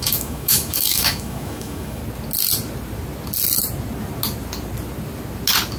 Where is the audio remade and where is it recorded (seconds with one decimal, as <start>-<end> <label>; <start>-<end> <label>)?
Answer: 0.0-2.0 remade; 2.0-5.8 recorded